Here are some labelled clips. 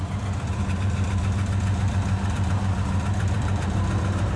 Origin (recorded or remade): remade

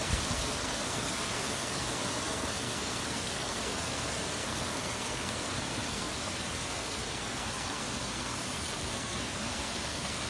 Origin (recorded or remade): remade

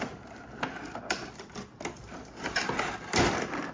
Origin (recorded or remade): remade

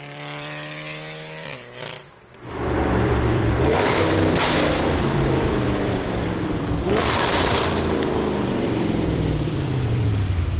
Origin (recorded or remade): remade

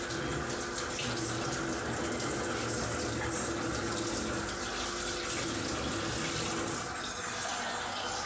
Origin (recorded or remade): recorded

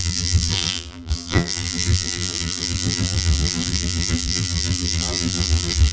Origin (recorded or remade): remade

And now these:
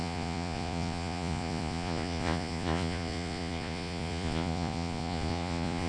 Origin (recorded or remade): remade